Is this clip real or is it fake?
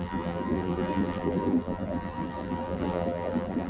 fake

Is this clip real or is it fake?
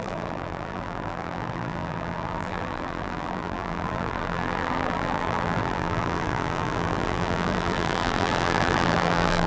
fake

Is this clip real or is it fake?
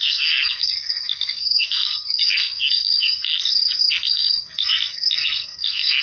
fake